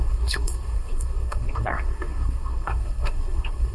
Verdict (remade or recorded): remade